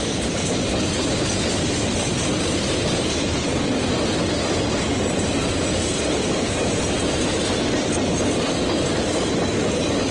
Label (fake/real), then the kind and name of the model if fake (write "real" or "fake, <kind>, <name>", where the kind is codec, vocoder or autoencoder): real